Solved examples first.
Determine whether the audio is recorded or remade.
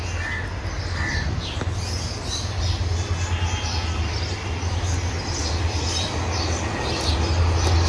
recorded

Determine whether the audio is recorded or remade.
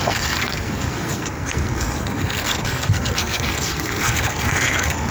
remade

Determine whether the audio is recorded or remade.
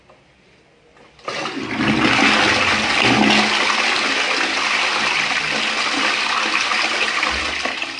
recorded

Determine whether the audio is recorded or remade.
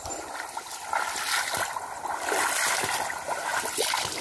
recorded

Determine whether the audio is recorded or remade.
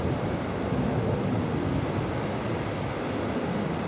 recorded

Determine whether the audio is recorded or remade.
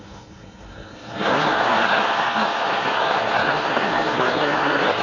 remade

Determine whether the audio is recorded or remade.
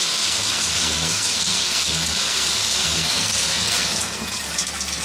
remade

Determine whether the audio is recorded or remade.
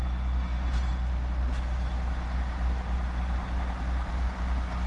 recorded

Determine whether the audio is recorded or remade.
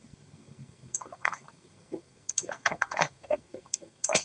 remade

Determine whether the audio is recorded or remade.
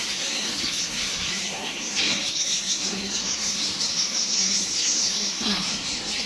remade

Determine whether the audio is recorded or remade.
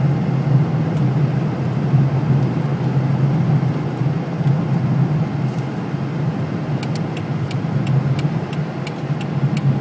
recorded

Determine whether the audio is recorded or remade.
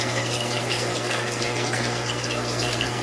remade